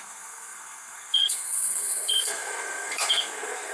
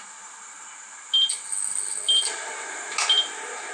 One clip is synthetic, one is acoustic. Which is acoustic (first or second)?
second